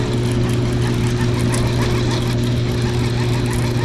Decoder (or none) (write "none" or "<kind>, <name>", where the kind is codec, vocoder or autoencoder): none